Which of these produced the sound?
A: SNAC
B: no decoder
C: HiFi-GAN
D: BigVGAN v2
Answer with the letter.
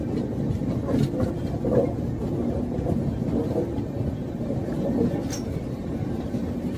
B